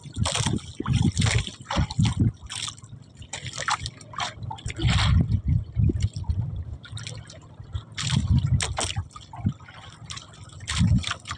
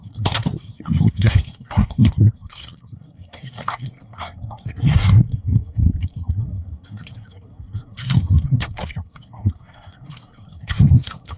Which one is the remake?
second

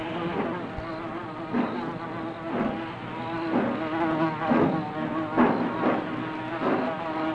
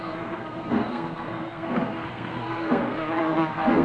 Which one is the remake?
second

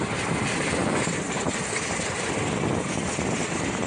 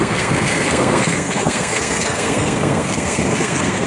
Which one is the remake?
second